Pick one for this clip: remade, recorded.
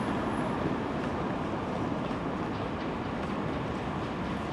recorded